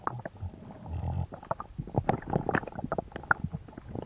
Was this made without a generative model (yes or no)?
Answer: yes